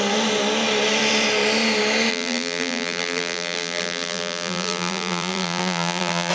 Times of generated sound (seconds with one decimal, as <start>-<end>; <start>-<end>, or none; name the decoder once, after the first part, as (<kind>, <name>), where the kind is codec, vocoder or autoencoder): 2.1-6.3 (vocoder, BigVGAN v2)